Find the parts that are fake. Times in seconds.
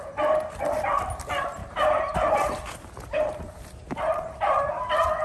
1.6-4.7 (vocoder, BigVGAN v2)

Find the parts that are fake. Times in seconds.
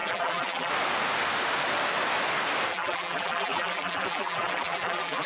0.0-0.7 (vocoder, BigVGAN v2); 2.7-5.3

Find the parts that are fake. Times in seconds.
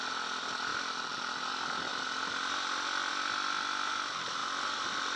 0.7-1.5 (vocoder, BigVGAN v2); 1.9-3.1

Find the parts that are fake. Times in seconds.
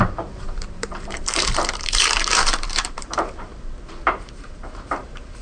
0.0-3.5 (vocoder, BigVGAN v2); 4.1-5.4